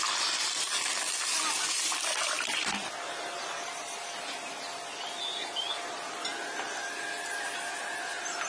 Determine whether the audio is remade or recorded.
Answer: recorded